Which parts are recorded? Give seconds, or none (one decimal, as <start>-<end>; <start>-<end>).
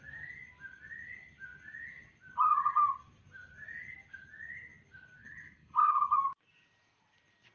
0.0-5.2; 6.0-7.5